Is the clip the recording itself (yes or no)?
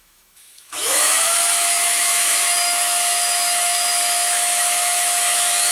no